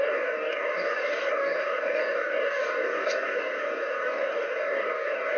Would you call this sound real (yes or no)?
no